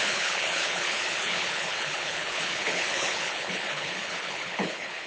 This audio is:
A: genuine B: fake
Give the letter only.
B